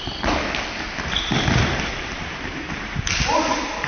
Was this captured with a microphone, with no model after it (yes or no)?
yes